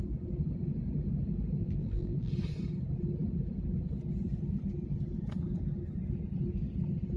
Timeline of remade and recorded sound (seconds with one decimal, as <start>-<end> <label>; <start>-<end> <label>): 0.0-1.6 recorded; 1.6-2.3 remade; 2.3-7.2 recorded